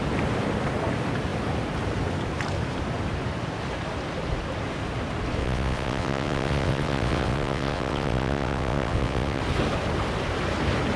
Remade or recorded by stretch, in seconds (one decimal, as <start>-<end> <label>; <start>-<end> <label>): 0.0-5.4 recorded; 5.4-9.4 remade; 9.4-11.0 recorded